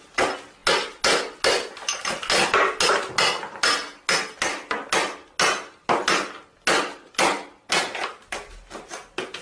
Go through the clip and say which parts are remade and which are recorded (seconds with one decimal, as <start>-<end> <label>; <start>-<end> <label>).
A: 0.0-9.4 recorded